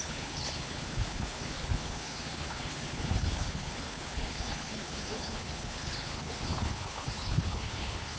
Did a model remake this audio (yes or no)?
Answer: yes